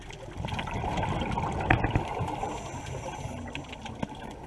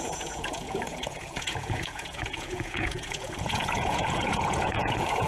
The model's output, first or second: second